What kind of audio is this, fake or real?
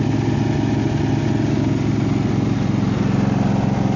real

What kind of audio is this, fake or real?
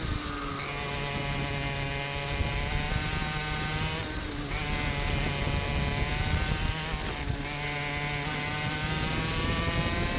real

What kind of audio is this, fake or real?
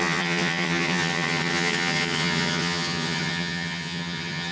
fake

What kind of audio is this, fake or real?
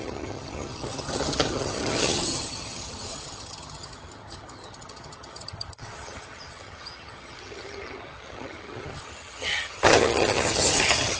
fake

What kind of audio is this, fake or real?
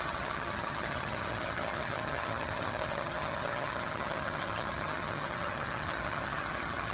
fake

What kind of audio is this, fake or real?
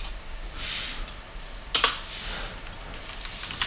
real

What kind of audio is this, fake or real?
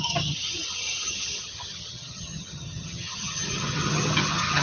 fake